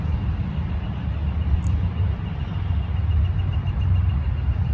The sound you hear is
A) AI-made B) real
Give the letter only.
B